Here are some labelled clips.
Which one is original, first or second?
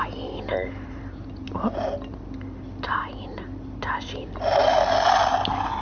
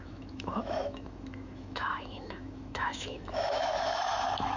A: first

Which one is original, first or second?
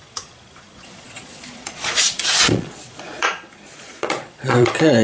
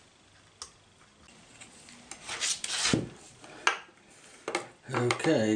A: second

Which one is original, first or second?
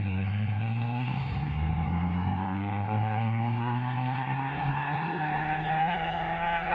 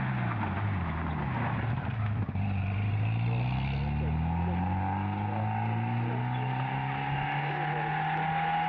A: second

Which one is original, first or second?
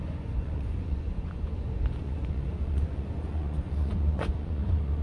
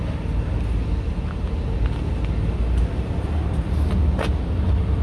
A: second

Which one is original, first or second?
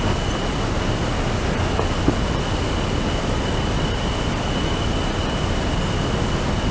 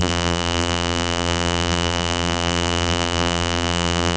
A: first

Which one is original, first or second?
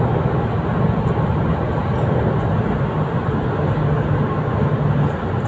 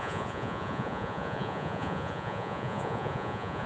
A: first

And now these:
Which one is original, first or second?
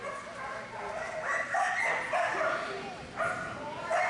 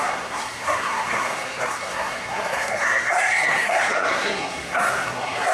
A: first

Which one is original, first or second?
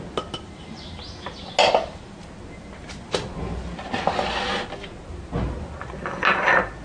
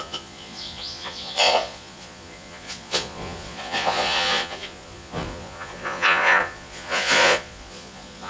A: first